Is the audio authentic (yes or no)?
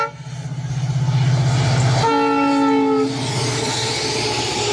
yes